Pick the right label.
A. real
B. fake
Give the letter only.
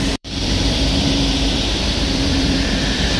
B